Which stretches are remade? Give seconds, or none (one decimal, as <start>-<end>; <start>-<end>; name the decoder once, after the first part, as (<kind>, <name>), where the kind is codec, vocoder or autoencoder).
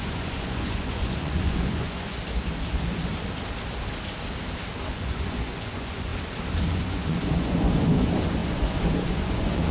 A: 0.0-2.2 (vocoder, Vocos); 2.7-3.1; 4.9-6.1; 6.7-9.7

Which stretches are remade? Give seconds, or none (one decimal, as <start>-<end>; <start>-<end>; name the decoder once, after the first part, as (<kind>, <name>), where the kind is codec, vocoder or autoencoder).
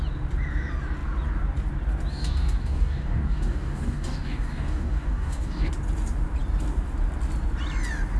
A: 2.1-5.7 (codec, DAC)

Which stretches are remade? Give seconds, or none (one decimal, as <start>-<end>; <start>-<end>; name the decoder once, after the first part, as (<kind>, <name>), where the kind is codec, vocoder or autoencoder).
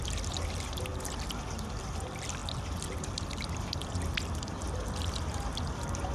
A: none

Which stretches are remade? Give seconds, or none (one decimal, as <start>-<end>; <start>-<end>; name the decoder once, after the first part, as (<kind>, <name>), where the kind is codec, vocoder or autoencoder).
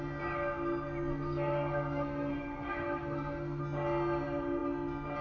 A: 1.1-3.6 (codec, SNAC)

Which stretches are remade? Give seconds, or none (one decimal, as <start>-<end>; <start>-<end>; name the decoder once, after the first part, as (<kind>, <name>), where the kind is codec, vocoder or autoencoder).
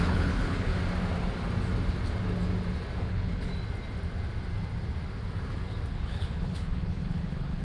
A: 0.0-0.7 (codec, HILCodec); 3.0-3.5; 5.9-7.6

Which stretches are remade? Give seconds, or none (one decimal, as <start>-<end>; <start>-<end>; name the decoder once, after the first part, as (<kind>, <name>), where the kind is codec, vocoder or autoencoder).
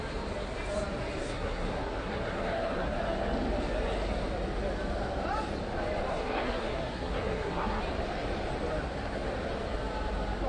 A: 1.2-3.0 (codec, SNAC); 6.1-7.8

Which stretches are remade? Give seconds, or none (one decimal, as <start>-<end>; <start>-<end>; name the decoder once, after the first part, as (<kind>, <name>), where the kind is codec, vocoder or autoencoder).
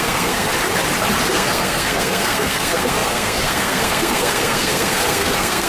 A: 0.0-0.5 (codec, SNAC); 1.3-5.7